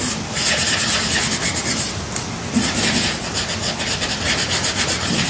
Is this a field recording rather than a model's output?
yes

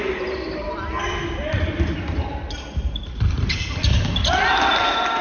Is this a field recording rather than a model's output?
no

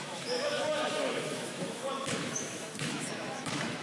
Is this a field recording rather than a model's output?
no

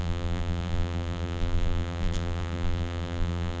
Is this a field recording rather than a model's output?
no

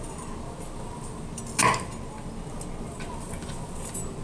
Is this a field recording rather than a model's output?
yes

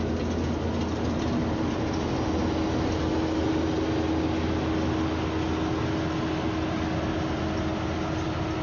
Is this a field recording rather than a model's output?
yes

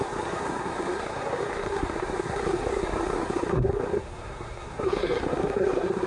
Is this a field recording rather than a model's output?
no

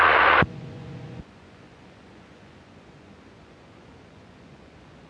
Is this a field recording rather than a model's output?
no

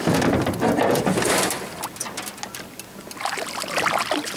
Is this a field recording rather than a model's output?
yes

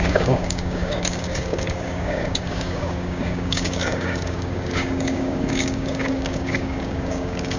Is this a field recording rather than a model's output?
no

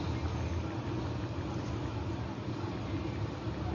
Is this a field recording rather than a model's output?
yes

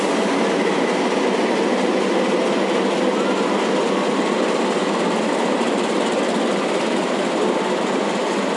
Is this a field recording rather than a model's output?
yes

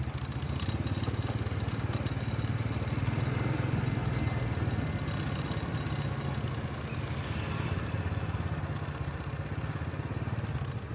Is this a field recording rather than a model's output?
yes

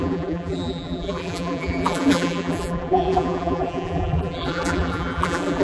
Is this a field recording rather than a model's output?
no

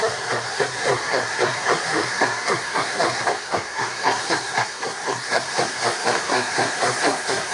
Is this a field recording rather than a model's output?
no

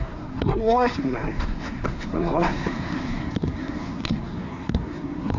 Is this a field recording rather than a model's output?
no